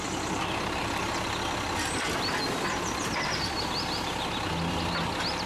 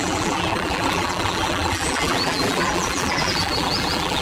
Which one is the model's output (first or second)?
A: second